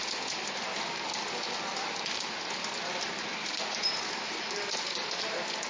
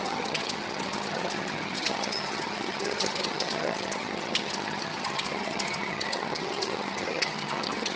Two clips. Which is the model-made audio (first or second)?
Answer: second